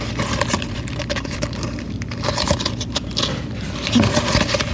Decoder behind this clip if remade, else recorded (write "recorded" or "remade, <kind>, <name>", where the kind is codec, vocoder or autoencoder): recorded